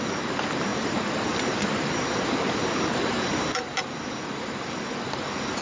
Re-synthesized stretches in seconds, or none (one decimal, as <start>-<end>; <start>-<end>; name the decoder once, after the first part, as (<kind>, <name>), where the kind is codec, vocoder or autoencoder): 0.7-4.1 (vocoder, BigVGAN v2)